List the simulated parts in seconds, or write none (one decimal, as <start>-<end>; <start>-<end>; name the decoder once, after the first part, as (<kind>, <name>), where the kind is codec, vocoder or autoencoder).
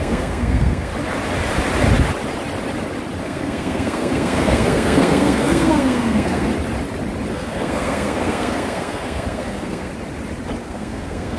0.0-0.9 (codec, SNAC); 3.2-6.5; 7.3-9.9; 10.6-11.4